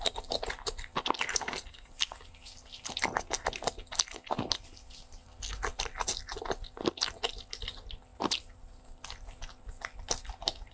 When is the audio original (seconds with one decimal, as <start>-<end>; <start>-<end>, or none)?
0.0-1.3; 1.9-10.7